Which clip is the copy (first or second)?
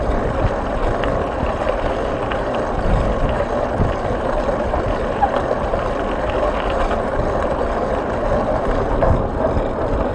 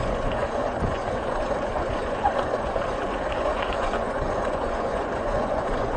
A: second